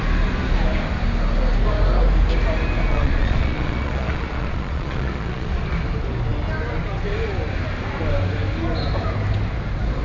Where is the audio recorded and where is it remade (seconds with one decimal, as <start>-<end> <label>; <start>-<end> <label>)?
0.0-2.9 recorded; 2.9-5.5 remade; 5.5-10.0 recorded